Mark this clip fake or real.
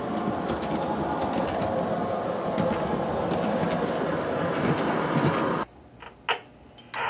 real